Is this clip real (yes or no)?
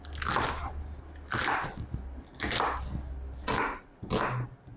yes